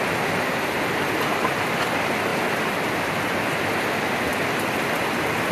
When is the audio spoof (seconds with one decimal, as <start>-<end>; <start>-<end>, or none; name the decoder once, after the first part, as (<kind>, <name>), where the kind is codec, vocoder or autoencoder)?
none